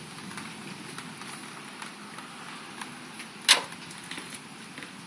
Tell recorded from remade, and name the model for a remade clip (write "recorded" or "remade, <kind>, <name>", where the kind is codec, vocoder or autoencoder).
recorded